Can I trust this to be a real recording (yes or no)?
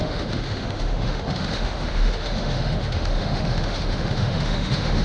no